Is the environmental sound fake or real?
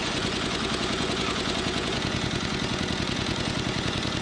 fake